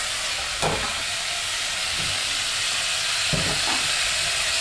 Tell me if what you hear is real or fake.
real